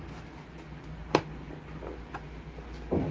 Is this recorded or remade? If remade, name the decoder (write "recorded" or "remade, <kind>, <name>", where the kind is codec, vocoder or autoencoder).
recorded